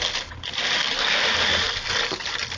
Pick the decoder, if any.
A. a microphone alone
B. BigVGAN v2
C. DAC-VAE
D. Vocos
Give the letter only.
A